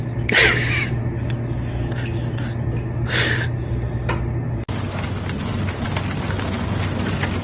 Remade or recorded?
recorded